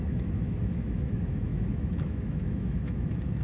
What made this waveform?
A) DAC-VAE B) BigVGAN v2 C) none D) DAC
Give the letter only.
A